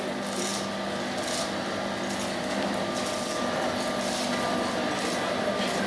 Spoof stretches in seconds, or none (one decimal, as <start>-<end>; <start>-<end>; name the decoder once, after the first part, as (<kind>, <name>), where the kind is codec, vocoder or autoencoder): none